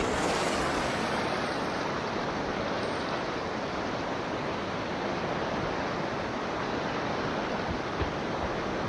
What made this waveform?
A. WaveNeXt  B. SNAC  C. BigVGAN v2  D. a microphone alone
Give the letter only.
C